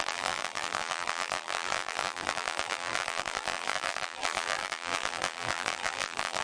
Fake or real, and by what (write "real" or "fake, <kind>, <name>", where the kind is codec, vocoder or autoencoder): fake, vocoder, BigVGAN v2